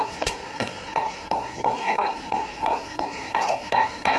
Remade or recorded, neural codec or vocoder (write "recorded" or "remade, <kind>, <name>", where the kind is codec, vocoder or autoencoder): remade, codec, SNAC